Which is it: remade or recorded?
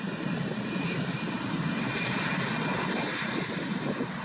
recorded